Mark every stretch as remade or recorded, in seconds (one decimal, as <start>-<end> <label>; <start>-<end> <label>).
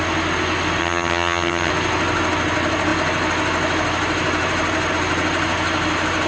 0.0-0.8 recorded; 0.8-1.7 remade; 1.7-6.3 recorded